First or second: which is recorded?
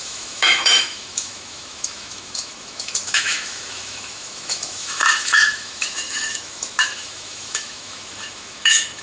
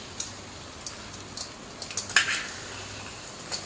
second